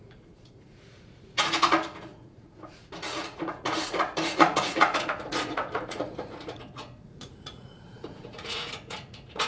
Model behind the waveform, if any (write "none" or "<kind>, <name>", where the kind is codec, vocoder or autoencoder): vocoder, Vocos